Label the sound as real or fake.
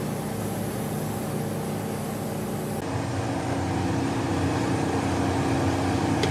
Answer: real